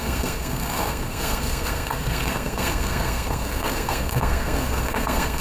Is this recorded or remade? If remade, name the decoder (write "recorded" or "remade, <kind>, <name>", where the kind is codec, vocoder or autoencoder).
remade, codec, SNAC